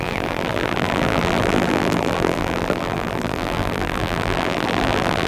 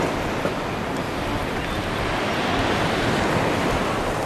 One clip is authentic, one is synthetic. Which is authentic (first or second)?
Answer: second